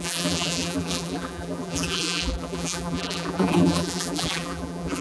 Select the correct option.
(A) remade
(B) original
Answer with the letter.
A